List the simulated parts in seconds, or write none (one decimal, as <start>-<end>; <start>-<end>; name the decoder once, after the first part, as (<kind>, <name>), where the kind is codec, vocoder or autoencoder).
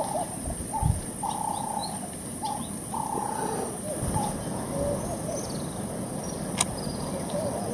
none